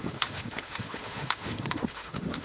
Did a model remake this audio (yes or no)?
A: yes